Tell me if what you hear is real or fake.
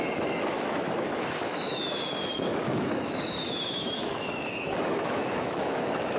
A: fake